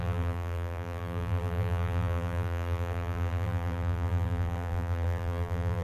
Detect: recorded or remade remade